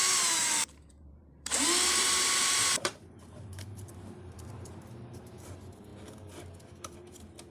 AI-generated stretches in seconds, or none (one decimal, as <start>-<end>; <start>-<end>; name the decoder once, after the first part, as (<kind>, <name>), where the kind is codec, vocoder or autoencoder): 0.0-5.9 (vocoder, BigVGAN v2); 6.8-7.5